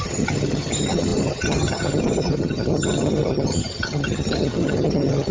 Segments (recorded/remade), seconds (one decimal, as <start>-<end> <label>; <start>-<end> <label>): 0.0-5.3 remade